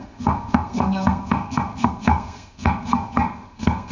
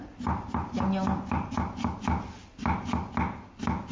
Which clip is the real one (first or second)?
second